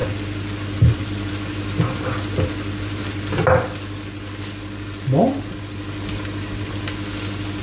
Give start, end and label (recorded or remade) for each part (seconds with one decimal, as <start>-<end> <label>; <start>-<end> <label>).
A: 0.0-7.6 recorded